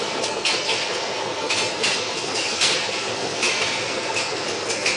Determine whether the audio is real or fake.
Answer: fake